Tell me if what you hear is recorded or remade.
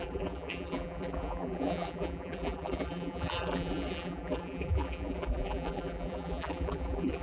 remade